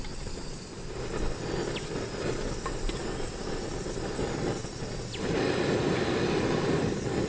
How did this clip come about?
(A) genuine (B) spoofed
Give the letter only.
A